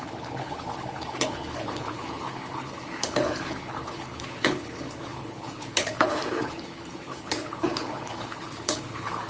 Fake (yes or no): yes